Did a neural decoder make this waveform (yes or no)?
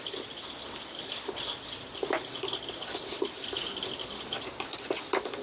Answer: no